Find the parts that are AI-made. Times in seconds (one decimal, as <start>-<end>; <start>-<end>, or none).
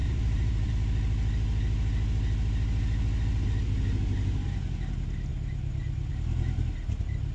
0.0-0.7